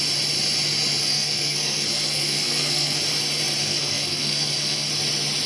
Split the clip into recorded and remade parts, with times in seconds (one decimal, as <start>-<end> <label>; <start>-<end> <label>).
0.0-1.0 recorded; 1.0-3.0 remade; 3.0-3.6 recorded; 3.6-4.9 remade; 4.9-5.5 recorded